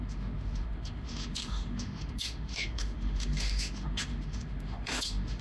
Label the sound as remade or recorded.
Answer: remade